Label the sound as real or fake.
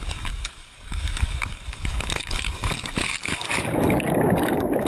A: fake